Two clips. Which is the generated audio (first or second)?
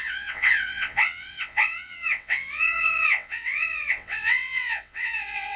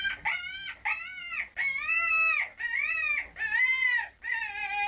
first